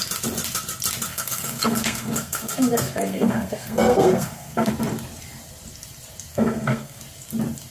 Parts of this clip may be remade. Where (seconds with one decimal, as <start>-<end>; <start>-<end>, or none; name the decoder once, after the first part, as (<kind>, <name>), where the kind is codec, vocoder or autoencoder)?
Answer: 1.1-4.7 (codec, SNAC); 6.3-7.0